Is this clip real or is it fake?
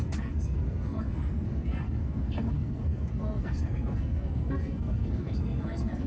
fake